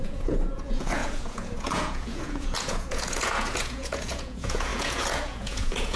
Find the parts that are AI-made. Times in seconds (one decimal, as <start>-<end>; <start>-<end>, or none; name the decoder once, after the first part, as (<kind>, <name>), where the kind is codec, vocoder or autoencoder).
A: 0.0-6.0 (vocoder, Vocos)